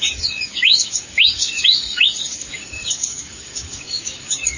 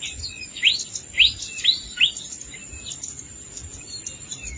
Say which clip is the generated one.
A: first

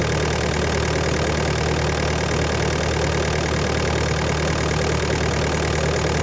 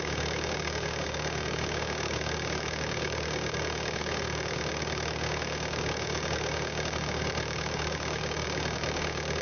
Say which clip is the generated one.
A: second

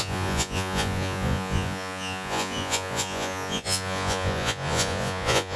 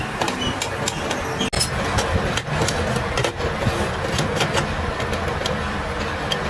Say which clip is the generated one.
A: first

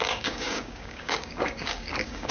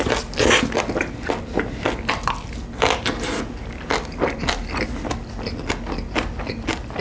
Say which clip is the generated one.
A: first